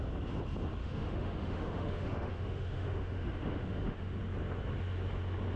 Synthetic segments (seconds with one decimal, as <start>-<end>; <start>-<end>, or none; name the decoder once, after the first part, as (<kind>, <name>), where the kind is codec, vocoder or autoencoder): 0.8-4.2 (autoencoder, DAC-VAE)